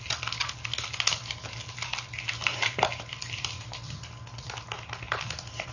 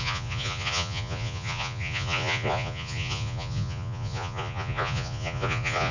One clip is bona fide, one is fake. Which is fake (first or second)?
second